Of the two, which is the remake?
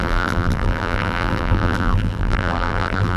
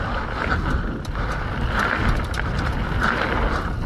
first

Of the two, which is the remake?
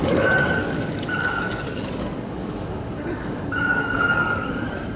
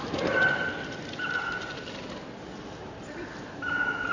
first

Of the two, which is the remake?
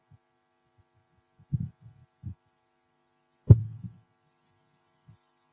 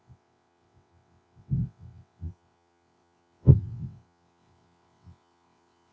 second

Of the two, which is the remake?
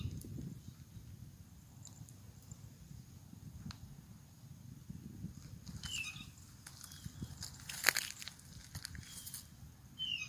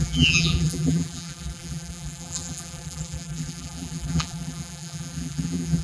second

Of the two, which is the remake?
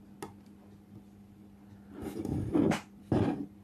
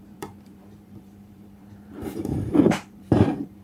second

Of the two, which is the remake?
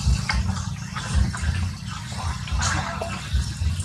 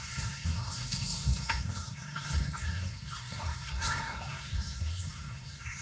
second